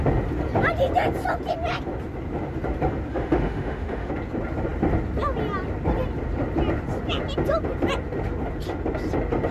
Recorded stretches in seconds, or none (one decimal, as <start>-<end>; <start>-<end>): 0.0-3.1; 4.1-9.5